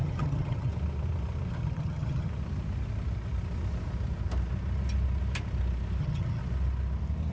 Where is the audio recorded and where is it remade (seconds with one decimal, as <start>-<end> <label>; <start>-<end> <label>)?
0.0-0.7 remade; 0.7-1.5 recorded; 1.5-2.3 remade; 2.3-6.0 recorded; 6.0-6.4 remade; 6.4-7.3 recorded